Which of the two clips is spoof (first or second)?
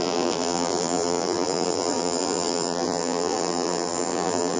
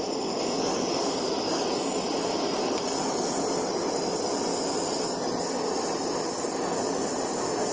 first